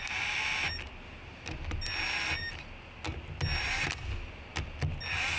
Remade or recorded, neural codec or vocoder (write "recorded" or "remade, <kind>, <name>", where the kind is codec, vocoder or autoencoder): recorded